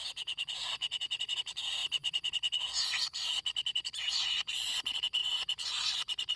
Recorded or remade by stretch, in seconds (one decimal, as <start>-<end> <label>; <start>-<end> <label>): 0.0-1.2 remade; 1.2-6.4 recorded